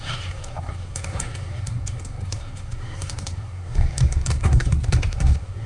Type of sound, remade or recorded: remade